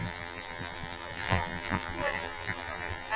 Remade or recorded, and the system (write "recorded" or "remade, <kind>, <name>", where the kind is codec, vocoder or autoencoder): remade, vocoder, BigVGAN v2